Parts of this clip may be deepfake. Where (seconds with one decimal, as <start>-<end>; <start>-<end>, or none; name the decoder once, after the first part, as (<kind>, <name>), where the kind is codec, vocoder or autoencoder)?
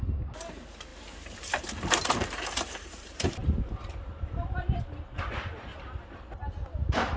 0.9-5.2 (vocoder, BigVGAN v2); 5.7-6.3